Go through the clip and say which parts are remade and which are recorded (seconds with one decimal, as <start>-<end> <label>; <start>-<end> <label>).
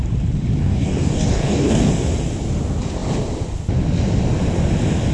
0.0-0.6 recorded; 0.6-1.9 remade; 1.9-5.1 recorded